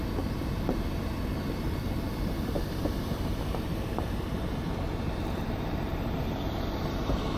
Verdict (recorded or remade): remade